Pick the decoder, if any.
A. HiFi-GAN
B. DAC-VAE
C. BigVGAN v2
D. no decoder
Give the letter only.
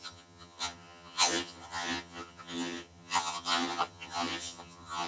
A